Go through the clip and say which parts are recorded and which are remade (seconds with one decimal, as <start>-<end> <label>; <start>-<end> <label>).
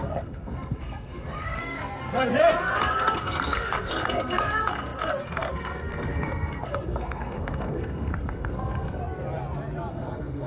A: 0.0-9.0 remade; 9.0-9.9 recorded; 9.9-10.5 remade